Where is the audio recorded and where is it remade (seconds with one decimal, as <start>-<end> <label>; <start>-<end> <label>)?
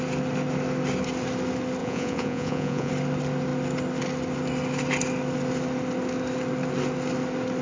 0.0-1.8 recorded; 1.8-2.9 remade; 2.9-7.6 recorded